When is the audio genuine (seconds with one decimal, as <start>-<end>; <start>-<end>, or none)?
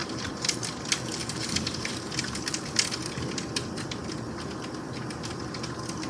0.7-1.2; 1.9-6.1